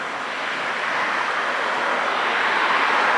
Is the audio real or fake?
real